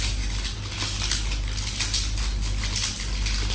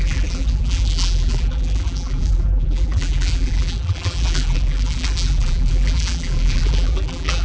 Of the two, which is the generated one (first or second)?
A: second